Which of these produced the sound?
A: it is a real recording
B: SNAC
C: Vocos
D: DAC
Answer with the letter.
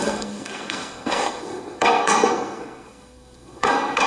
B